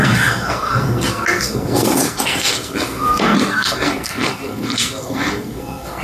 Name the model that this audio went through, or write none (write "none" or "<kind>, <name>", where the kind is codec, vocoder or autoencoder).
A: codec, SNAC